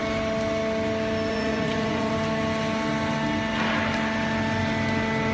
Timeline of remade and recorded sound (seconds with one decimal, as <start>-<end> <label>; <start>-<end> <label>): 0.0-1.3 recorded; 1.3-2.1 remade; 2.1-5.3 recorded